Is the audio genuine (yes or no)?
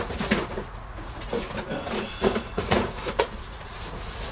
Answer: no